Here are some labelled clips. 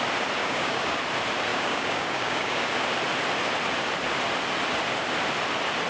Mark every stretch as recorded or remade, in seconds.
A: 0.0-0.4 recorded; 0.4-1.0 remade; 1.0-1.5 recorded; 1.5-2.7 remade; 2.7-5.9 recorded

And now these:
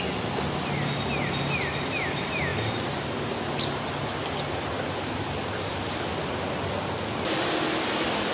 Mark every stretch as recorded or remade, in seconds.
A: 0.0-8.3 recorded

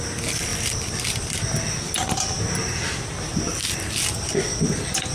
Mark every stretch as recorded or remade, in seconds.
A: 0.0-5.1 recorded